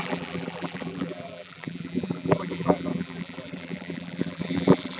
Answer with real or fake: fake